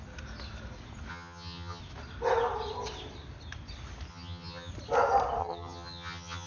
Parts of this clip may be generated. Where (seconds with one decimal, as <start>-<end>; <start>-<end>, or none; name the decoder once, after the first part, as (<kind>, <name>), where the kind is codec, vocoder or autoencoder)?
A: 1.1-1.8 (vocoder, HiFi-GAN); 4.1-4.7; 5.4-6.5